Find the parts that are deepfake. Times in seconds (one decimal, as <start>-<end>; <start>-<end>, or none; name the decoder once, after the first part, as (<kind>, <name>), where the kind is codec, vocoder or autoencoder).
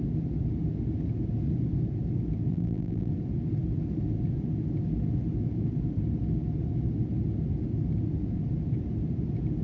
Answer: 2.5-3.1 (vocoder, BigVGAN v2)